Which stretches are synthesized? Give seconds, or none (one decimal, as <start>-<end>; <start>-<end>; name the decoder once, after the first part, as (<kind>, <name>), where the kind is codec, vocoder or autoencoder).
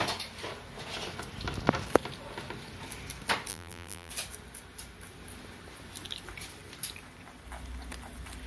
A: 3.5-4.1 (vocoder, BigVGAN v2)